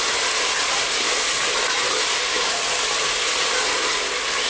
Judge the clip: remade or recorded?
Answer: recorded